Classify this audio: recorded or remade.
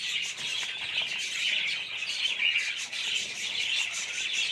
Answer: recorded